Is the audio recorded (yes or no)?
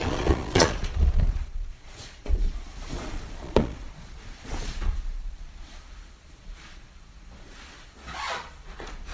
no